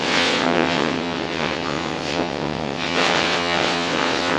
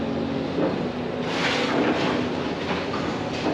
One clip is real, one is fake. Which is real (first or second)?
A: second